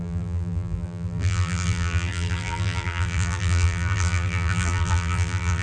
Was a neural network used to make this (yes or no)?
yes